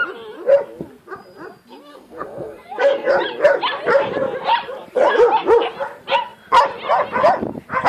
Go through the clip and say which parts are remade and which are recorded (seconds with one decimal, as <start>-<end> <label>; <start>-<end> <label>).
0.0-1.9 recorded; 1.9-3.1 remade; 3.1-7.9 recorded